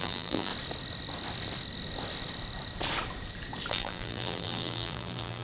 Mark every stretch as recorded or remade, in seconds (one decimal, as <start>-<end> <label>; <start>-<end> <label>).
0.0-0.5 remade; 0.5-3.7 recorded; 3.7-5.4 remade